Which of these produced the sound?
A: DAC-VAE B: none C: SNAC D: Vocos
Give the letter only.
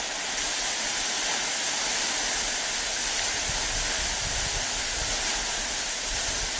B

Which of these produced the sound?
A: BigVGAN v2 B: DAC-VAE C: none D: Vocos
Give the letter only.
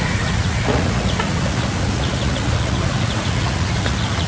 D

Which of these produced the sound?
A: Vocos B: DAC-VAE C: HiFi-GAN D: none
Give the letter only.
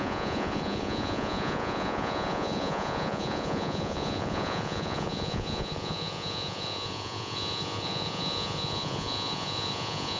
A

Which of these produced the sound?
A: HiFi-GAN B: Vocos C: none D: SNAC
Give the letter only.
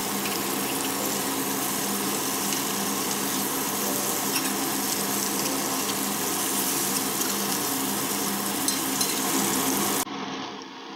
C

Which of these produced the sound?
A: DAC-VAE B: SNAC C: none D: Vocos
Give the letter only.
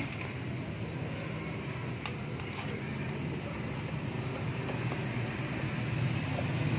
C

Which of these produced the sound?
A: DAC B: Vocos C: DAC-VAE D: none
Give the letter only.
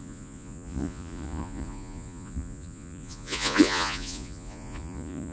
B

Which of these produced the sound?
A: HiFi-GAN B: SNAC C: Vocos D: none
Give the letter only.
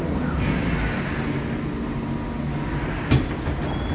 D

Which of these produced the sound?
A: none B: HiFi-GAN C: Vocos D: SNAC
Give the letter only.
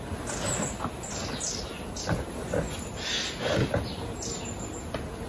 A